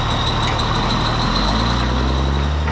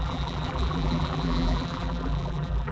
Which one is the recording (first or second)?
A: first